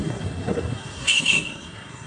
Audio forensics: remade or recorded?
remade